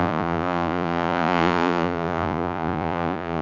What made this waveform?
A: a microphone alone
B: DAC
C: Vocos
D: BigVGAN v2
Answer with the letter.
C